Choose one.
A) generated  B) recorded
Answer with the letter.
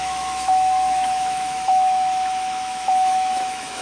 A